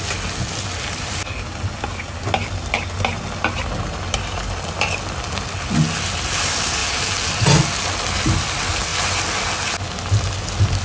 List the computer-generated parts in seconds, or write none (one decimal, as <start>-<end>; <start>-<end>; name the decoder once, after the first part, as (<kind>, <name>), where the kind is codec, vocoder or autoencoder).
6.8-7.3 (vocoder, BigVGAN v2)